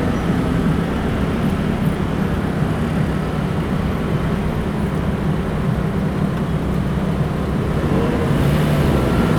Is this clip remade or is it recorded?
recorded